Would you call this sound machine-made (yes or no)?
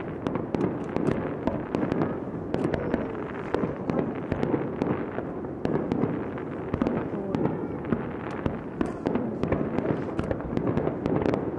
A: no